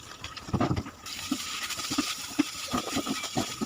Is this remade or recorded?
remade